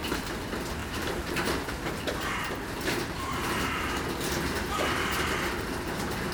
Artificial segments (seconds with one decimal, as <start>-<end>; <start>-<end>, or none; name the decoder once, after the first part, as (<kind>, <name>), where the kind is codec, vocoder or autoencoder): 0.8-2.5 (vocoder, BigVGAN v2)